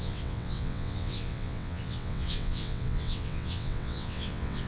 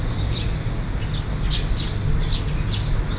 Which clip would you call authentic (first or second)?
second